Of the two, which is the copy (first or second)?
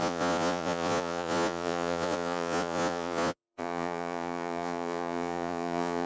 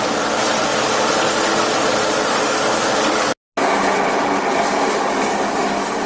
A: first